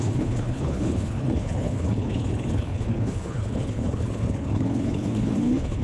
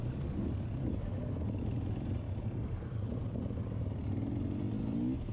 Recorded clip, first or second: second